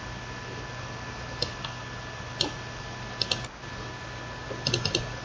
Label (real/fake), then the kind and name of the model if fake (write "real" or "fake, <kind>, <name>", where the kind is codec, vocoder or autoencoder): real